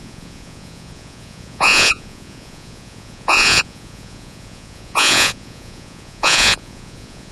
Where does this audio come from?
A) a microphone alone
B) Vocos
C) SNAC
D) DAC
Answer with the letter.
B